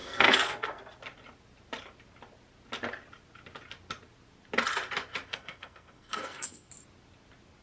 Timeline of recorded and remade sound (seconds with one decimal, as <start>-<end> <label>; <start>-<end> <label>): 0.0-0.8 remade; 0.8-5.3 recorded; 5.3-6.7 remade; 6.7-7.6 recorded